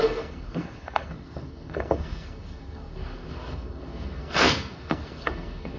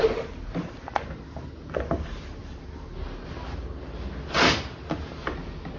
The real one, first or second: second